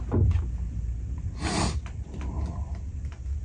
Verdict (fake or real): real